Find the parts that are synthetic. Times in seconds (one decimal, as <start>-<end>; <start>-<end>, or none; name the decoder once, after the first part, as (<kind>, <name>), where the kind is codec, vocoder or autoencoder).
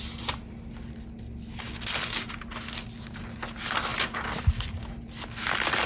3.9-4.8 (vocoder, BigVGAN v2)